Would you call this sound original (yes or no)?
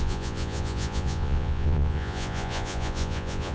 no